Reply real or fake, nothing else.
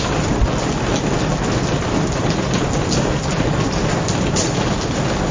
real